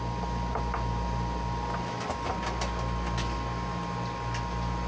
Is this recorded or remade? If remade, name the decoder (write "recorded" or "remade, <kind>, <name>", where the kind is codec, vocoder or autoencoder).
recorded